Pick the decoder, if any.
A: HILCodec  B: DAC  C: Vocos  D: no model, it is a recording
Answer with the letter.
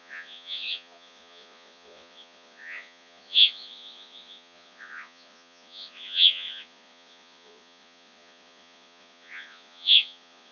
C